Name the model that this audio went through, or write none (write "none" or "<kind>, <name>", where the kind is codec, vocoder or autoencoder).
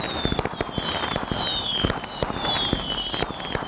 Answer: none